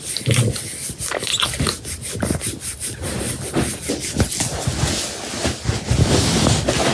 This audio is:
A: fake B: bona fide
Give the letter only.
B